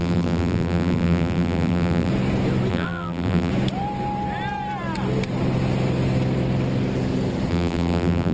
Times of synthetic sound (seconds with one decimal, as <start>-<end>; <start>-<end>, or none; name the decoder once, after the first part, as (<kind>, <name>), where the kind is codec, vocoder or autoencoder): 0.0-2.1 (vocoder, BigVGAN v2); 2.7-3.5; 7.5-8.3